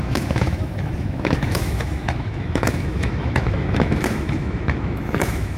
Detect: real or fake fake